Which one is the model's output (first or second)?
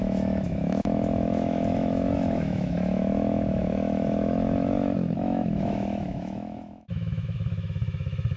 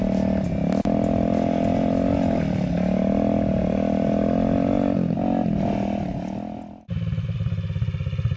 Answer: first